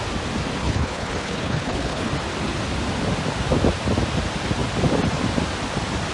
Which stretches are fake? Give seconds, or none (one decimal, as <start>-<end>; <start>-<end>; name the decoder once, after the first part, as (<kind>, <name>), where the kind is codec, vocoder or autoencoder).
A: 0.6-2.1 (codec, HILCodec)

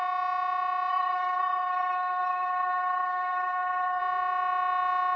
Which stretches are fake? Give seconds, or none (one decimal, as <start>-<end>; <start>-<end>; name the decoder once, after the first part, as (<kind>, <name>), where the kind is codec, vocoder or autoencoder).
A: 0.9-4.0 (codec, SNAC)

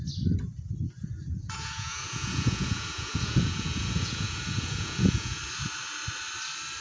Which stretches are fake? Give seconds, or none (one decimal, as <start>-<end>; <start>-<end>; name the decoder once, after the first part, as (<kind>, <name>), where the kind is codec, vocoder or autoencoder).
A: 1.3-5.4 (vocoder, Vocos)